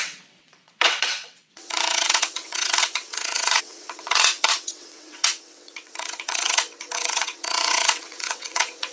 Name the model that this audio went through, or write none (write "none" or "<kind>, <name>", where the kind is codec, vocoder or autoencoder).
vocoder, WaveNeXt